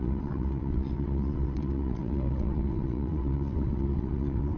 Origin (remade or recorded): remade